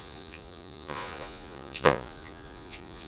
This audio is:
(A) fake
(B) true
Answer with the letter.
A